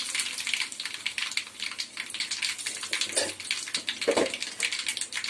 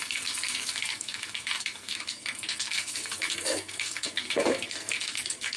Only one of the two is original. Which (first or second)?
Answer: first